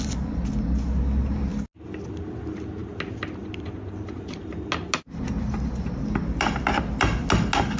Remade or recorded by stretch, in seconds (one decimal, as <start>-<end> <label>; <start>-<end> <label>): 0.0-7.8 recorded